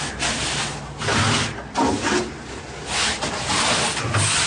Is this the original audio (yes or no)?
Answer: yes